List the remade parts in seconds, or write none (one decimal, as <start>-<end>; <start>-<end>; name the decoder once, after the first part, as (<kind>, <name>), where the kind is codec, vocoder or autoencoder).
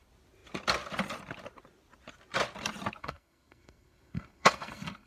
3.0-5.1 (codec, SNAC)